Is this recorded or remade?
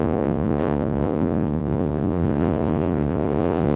remade